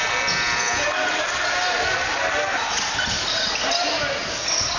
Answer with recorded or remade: recorded